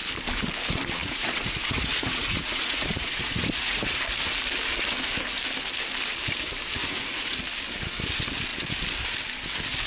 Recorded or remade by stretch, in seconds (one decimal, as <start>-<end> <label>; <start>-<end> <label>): 0.0-1.0 recorded; 1.0-4.0 remade; 4.0-6.8 recorded; 6.8-7.4 remade; 7.4-9.9 recorded